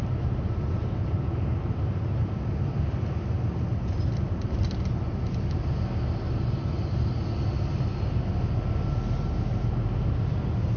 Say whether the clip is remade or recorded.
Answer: recorded